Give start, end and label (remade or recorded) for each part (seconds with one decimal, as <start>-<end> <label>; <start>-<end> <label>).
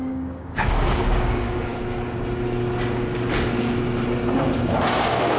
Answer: 0.0-1.7 remade; 1.7-4.9 recorded; 4.9-5.4 remade